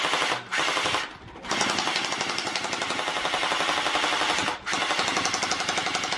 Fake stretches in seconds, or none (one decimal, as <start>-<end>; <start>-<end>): none